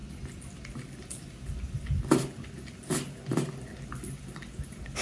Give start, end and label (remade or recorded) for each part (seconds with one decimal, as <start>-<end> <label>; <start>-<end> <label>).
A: 0.0-5.0 recorded